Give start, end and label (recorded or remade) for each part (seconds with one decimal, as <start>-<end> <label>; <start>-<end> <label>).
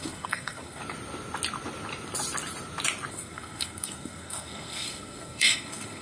0.0-0.8 remade; 0.8-3.1 recorded; 3.1-6.0 remade